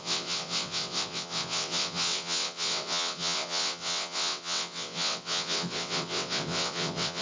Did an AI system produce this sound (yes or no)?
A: yes